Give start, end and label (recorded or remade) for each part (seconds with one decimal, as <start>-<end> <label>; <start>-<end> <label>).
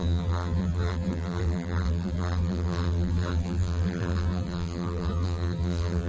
0.0-6.1 remade